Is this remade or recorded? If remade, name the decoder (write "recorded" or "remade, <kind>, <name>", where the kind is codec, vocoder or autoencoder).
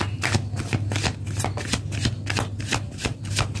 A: recorded